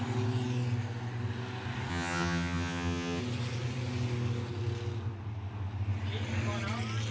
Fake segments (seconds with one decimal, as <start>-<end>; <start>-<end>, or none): 1.9-3.2